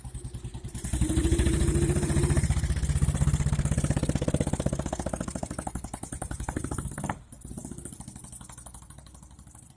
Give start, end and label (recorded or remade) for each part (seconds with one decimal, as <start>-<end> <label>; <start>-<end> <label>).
0.0-7.6 remade; 7.6-8.8 recorded; 8.8-9.8 remade